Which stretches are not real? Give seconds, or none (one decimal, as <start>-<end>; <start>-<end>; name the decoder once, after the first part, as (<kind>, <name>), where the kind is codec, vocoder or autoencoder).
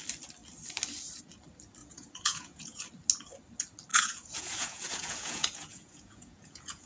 1.8-2.8 (vocoder, Vocos); 3.9-6.9